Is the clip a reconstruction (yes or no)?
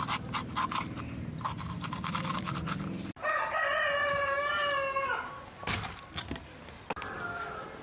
no